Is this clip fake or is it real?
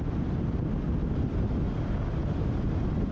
real